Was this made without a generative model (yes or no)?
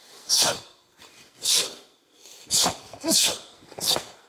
no